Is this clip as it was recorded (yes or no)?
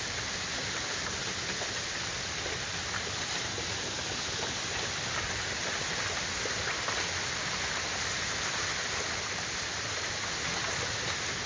yes